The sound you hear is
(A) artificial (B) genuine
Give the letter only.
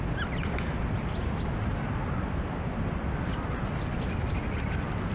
B